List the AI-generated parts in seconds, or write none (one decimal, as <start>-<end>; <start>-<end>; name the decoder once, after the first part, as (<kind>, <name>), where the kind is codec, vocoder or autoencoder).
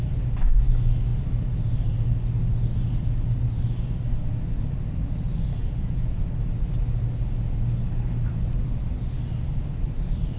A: 5.6-6.2 (vocoder, Vocos)